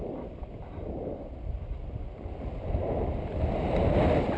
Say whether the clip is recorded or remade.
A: recorded